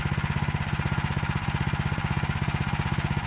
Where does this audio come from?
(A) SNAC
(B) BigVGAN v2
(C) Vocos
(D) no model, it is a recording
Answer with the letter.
D